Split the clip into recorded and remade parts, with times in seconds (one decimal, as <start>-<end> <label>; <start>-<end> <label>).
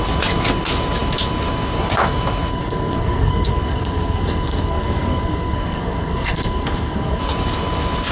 0.0-2.5 recorded; 2.5-7.2 remade; 7.2-8.1 recorded